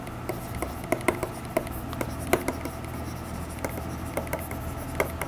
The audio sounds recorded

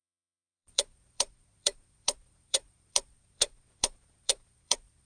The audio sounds remade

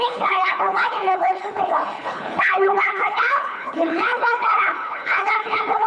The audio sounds remade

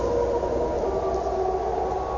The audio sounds recorded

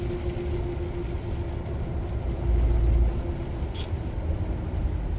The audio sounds recorded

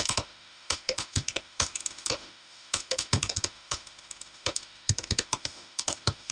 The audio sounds remade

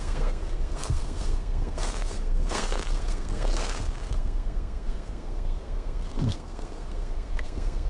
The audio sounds remade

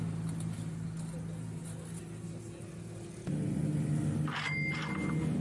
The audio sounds recorded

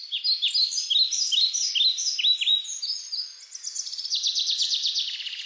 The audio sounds recorded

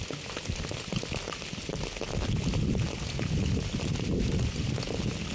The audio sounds recorded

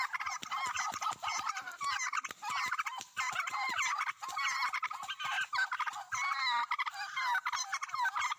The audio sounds recorded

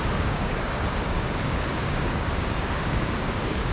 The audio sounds remade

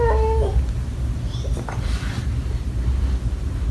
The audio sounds recorded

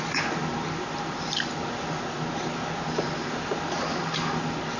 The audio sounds recorded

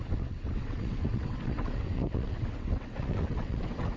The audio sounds remade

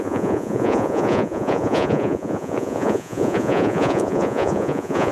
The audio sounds remade